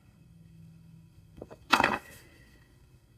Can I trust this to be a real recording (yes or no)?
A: no